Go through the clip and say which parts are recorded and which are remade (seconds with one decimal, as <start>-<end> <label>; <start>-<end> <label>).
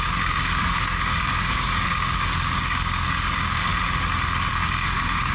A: 0.0-3.7 remade; 3.7-4.5 recorded; 4.5-5.3 remade